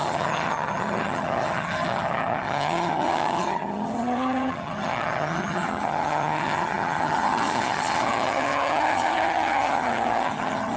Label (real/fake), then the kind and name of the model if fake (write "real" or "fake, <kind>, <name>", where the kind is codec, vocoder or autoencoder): fake, vocoder, HiFi-GAN